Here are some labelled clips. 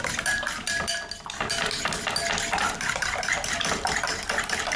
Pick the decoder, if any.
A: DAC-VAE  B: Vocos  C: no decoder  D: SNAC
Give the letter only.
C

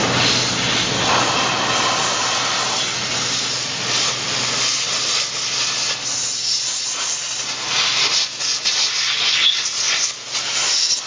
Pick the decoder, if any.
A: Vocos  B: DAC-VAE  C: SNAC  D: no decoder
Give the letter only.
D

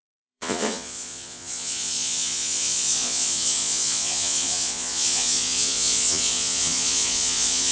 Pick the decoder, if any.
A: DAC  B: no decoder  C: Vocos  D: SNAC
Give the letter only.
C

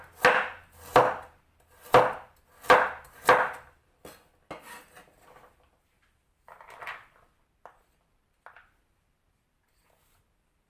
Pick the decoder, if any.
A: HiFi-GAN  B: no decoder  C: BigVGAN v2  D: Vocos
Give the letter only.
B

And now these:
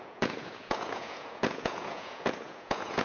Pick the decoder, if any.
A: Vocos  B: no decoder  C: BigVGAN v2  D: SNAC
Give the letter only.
A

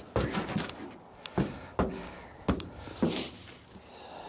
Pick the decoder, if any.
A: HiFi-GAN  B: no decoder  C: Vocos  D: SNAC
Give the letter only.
B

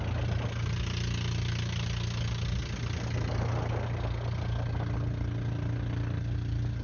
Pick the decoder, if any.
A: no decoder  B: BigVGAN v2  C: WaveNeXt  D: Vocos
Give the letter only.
A